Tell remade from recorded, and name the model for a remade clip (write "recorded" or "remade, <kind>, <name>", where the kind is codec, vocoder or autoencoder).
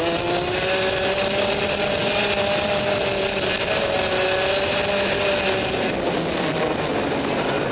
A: recorded